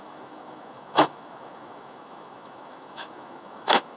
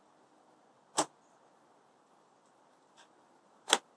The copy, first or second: first